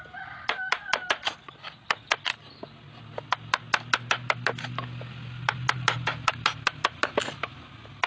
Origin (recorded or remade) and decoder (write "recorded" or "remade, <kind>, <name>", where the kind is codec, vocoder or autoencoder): recorded